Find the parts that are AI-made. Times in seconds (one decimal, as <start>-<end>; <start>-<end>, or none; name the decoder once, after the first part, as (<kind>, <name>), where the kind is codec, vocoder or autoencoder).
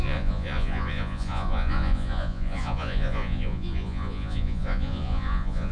0.0-5.7 (vocoder, Vocos)